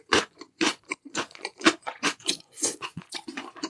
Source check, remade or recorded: remade